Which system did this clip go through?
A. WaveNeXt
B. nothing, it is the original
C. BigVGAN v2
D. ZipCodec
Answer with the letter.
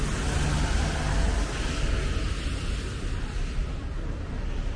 B